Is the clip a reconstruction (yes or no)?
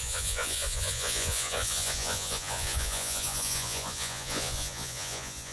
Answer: yes